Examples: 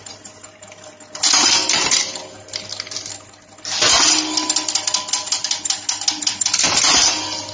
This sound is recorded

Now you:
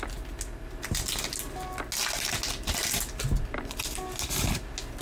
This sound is recorded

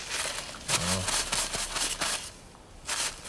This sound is recorded